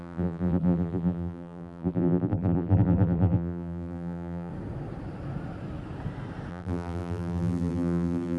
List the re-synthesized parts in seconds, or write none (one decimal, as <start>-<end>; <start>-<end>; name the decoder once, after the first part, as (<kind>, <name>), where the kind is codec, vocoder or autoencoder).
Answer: 0.0-4.5 (vocoder, BigVGAN v2); 6.5-8.4